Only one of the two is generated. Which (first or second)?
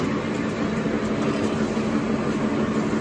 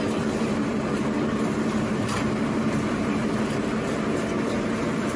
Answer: second